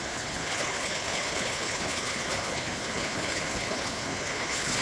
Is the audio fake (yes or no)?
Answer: yes